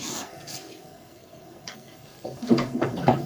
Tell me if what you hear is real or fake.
fake